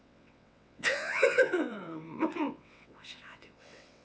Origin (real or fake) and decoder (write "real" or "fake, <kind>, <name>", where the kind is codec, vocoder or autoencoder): fake, vocoder, WaveNeXt